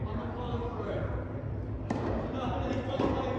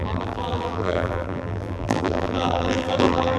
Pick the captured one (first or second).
first